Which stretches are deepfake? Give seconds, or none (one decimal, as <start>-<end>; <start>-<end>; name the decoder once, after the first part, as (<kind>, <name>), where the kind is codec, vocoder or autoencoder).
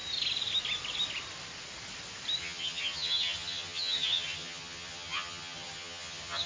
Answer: 2.4-6.5 (vocoder, HiFi-GAN)